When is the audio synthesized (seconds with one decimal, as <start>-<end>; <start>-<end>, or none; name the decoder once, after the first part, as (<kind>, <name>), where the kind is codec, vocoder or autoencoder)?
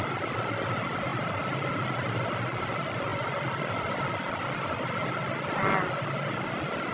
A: none